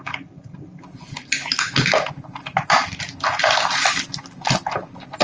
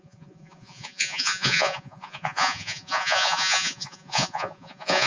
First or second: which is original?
first